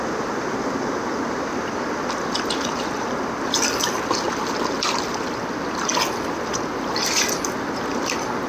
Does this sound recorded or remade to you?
recorded